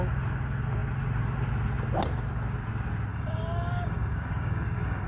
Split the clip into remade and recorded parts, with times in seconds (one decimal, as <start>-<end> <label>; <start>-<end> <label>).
0.0-3.1 recorded; 3.1-5.1 remade